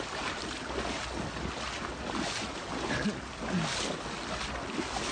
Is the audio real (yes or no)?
yes